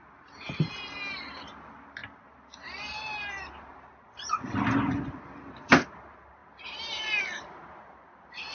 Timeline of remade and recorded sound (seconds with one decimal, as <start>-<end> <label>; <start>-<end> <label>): 0.0-8.5 recorded